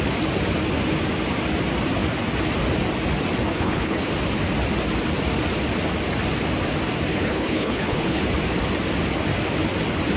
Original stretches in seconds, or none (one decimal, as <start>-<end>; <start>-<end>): 0.0-3.5; 4.1-7.1; 8.2-10.2